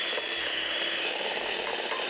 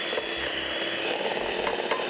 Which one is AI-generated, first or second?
first